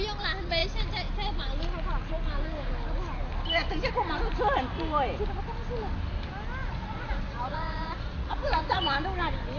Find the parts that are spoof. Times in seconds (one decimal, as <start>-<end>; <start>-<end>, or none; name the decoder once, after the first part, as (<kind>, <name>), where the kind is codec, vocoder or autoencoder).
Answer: 6.6-8.8 (vocoder, Vocos)